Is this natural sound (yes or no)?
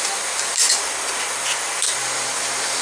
no